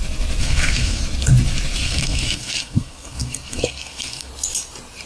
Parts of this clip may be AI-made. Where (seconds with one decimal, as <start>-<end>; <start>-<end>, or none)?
0.4-1.0; 1.8-4.3